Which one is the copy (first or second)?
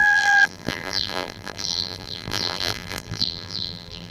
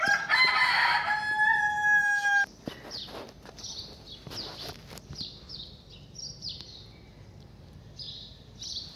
first